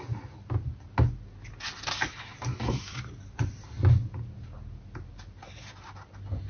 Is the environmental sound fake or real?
real